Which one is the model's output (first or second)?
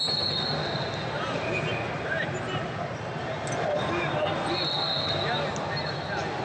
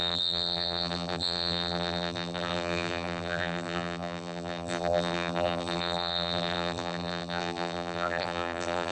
second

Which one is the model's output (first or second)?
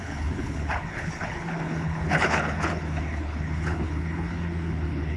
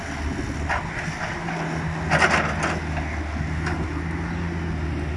first